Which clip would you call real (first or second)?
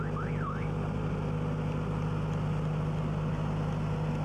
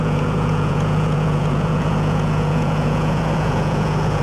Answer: first